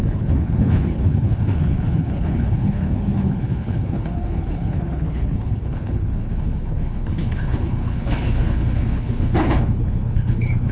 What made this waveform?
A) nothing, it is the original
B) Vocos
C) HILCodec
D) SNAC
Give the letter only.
C